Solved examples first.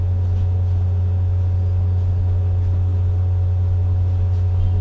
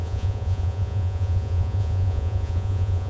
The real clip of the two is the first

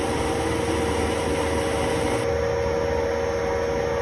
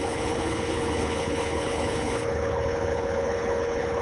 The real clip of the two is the first